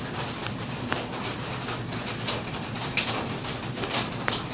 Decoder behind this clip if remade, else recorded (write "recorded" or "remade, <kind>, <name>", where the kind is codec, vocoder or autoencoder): remade, vocoder, BigVGAN v2